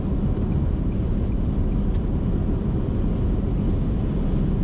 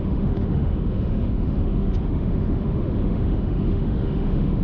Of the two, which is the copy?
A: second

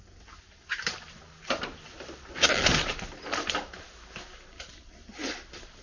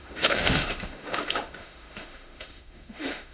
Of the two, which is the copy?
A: second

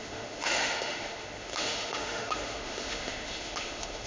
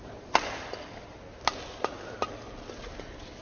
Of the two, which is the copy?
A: first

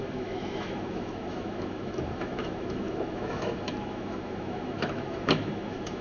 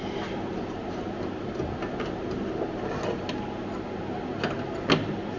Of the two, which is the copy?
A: first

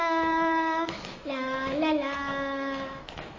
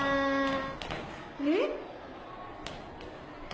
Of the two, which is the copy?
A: first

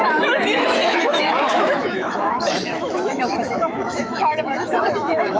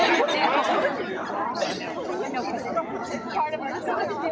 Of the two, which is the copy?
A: first